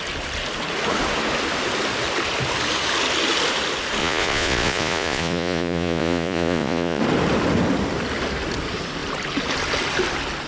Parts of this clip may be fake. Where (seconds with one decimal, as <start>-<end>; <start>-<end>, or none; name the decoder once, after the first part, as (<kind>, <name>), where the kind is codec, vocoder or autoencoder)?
4.0-7.0 (vocoder, Vocos)